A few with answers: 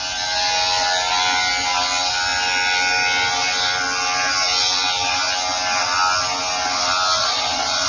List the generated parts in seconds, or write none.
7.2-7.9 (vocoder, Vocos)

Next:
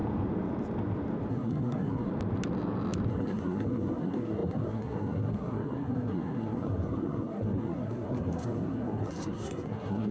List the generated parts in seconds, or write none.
1.3-2.1 (codec, SNAC); 3.1-10.1

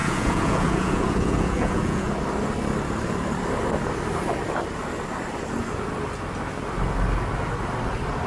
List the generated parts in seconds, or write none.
0.0-2.1 (vocoder, Vocos)

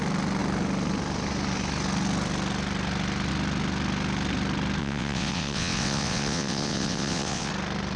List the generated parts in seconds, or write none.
4.8-7.5 (vocoder, WaveNeXt)

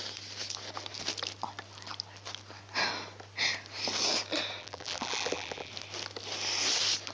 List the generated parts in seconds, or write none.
4.6-5.7 (vocoder, BigVGAN v2)

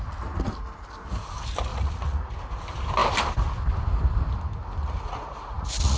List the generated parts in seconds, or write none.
1.7-2.3 (vocoder, Vocos); 4.8-6.0